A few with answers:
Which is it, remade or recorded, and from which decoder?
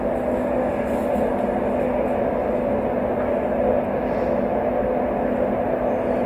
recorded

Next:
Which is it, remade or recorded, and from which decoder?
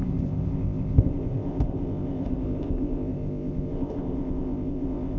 remade, codec, ZipCodec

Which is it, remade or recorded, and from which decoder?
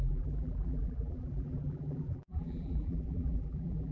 remade, vocoder, BigVGAN v2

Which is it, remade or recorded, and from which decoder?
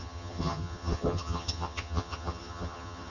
remade, vocoder, HiFi-GAN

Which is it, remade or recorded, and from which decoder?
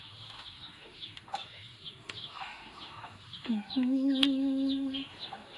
remade, autoencoder, DAC-VAE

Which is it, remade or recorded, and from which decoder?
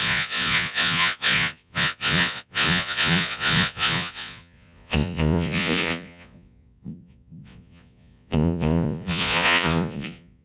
remade, vocoder, Vocos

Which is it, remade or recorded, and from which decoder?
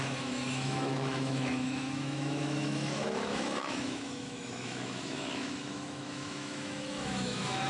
remade, autoencoder, DAC-VAE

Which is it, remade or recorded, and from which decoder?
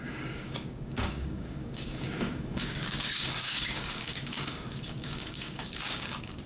remade, codec, DAC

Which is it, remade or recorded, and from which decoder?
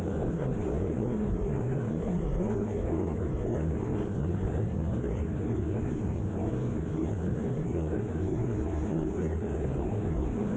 remade, codec, SNAC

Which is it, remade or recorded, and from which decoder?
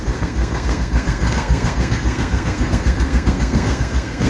remade, codec, SNAC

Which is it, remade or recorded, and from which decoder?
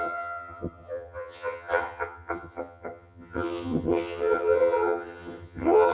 remade, vocoder, HiFi-GAN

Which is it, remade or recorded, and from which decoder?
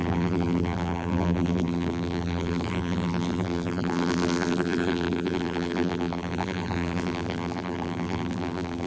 remade, vocoder, BigVGAN v2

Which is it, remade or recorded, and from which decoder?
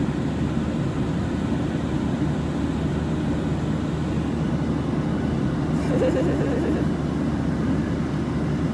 recorded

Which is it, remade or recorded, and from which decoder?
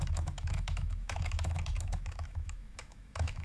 remade, autoencoder, DAC-VAE